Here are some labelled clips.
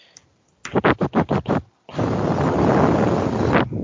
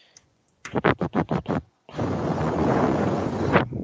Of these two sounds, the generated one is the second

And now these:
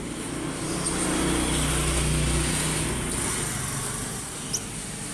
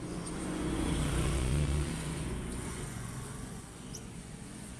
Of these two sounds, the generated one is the second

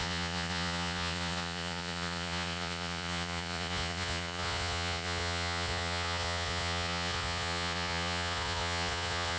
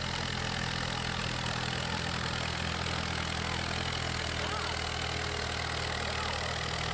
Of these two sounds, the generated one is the first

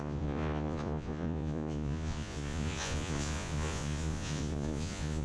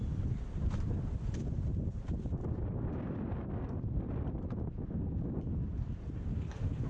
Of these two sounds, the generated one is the first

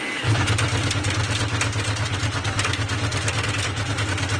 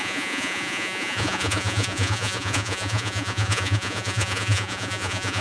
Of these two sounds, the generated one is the second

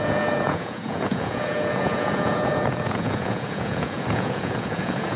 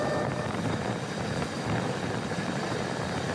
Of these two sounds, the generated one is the first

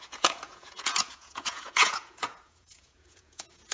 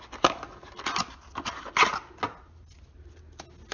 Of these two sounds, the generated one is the first